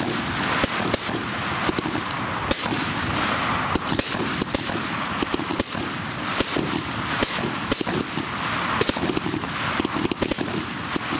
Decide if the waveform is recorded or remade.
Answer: recorded